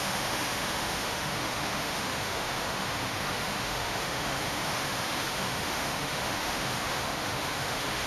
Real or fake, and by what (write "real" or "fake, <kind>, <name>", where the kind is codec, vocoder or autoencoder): fake, autoencoder, DAC-VAE